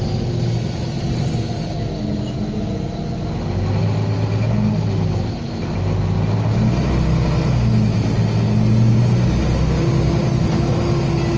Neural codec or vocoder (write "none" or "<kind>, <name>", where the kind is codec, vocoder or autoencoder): none